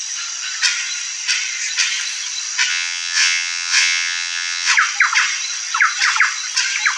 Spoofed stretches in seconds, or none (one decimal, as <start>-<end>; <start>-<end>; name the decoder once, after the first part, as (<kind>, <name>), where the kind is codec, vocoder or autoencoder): 2.7-4.7 (vocoder, WaveNeXt)